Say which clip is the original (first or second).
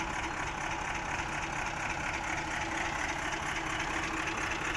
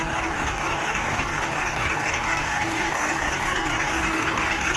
first